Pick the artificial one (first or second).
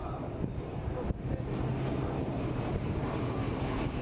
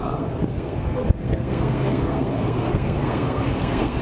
second